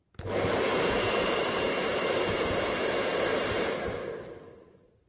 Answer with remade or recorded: remade